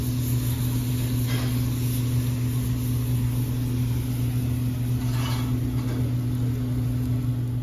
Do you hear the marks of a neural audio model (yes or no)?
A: no